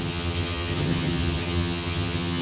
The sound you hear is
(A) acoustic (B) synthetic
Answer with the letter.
B